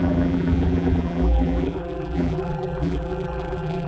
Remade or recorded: remade